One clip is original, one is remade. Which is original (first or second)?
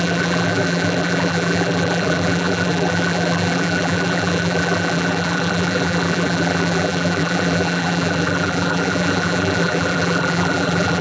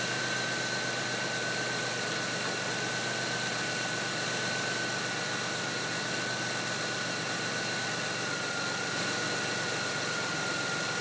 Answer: second